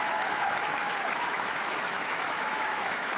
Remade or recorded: remade